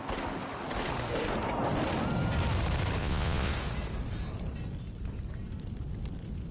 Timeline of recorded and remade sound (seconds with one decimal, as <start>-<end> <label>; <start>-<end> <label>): 0.0-3.0 recorded; 3.0-3.5 remade; 3.5-6.5 recorded